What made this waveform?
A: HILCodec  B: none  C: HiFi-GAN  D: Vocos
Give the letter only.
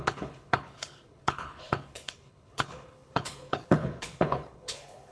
A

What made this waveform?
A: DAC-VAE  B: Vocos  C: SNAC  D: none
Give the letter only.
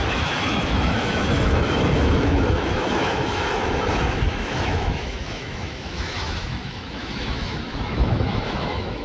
A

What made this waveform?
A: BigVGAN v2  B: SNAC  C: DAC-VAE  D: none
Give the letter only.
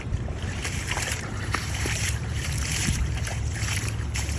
A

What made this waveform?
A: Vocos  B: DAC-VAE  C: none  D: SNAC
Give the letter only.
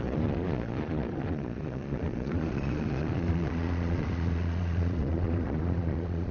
A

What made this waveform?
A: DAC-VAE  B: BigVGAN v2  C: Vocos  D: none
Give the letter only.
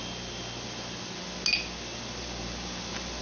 D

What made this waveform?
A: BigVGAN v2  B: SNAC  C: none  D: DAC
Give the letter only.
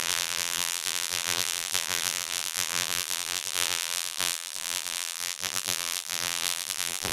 A